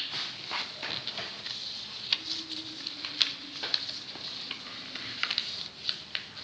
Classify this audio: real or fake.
real